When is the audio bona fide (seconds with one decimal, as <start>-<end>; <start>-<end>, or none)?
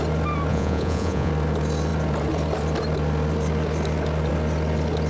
0.0-0.5; 1.3-5.1